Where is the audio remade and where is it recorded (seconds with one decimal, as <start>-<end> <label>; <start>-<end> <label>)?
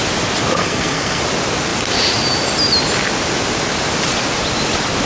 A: 0.0-0.6 recorded; 0.6-1.2 remade; 1.2-5.1 recorded